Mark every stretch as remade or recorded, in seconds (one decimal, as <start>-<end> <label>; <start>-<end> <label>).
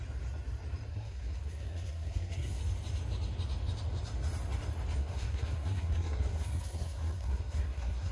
0.0-0.9 recorded; 0.9-2.6 remade; 2.6-5.0 recorded; 5.0-8.1 remade